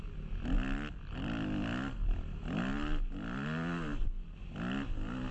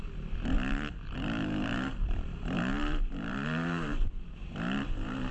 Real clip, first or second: first